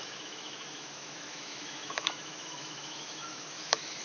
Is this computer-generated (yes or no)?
yes